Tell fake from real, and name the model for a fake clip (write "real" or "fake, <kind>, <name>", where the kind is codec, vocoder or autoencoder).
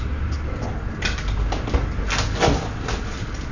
real